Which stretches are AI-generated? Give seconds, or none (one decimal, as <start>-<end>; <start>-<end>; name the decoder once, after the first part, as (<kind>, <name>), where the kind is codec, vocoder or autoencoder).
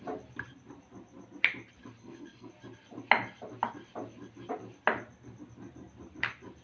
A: 2.0-2.5 (codec, SNAC)